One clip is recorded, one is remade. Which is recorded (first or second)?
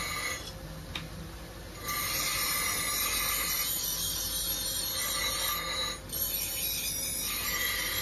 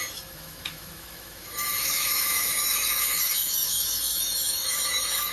first